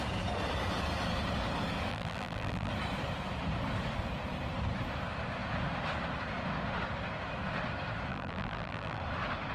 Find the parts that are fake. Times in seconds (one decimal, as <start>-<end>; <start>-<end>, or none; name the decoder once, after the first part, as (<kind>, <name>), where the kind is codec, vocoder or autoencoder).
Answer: 1.9-2.7 (vocoder, BigVGAN v2); 8.1-9.0